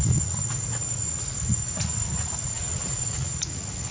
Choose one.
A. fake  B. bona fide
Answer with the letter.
A